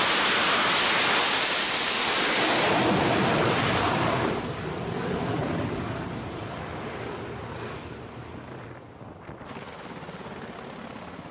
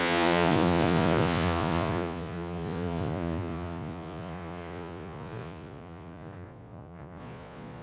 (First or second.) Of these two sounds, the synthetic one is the second